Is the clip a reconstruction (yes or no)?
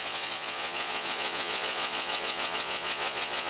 yes